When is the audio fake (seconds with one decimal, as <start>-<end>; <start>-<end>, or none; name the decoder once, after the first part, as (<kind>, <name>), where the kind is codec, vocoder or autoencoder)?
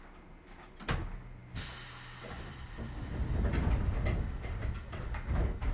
none